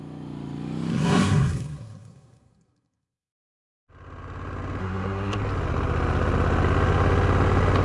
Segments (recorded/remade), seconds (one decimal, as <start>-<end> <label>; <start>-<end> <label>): 0.0-0.9 recorded; 0.9-3.9 remade; 3.9-4.8 recorded; 4.8-5.4 remade; 5.4-7.8 recorded